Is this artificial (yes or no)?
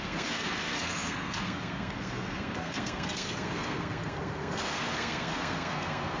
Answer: yes